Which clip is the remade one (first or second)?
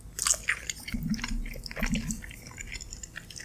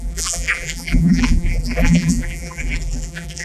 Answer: second